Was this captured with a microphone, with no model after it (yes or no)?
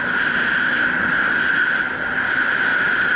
yes